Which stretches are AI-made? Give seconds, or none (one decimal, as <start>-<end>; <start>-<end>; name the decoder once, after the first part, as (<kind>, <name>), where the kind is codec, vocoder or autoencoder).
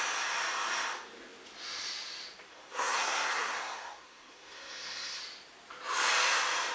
2.5-5.2 (codec, SNAC)